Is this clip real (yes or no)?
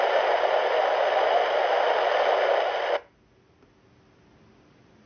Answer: yes